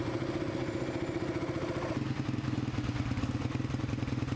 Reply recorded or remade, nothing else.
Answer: recorded